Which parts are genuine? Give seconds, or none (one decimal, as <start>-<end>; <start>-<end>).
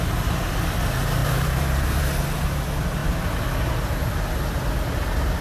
0.0-1.2; 2.0-5.4